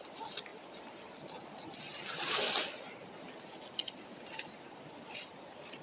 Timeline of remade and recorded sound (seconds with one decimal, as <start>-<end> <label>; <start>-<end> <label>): 0.0-5.8 recorded